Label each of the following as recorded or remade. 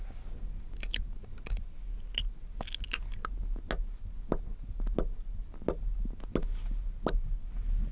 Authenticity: recorded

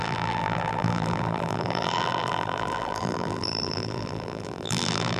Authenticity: remade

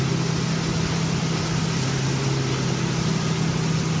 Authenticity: recorded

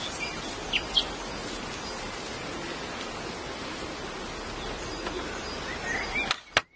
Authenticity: recorded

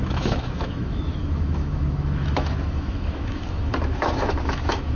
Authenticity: remade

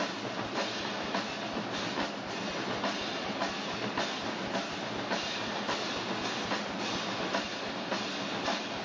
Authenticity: recorded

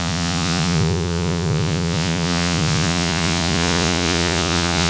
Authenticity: remade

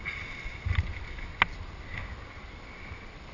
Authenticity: recorded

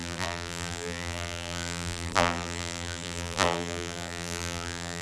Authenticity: remade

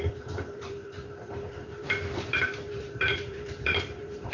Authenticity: remade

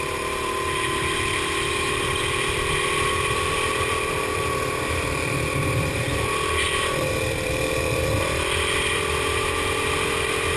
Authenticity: remade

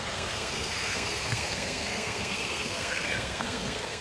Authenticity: remade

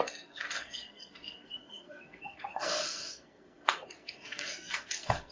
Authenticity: remade